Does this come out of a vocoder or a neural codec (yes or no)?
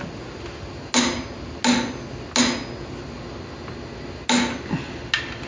no